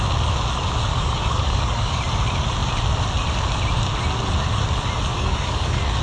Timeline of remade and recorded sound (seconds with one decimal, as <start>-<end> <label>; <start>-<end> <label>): 0.0-0.9 recorded; 0.9-2.0 remade; 2.0-5.1 recorded; 5.1-6.0 remade